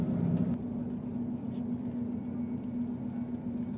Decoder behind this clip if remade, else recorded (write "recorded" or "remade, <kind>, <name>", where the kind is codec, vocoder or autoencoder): recorded